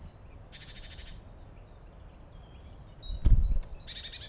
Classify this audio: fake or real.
real